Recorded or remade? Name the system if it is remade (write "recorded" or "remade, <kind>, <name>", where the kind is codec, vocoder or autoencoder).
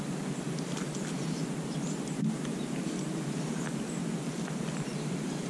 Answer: recorded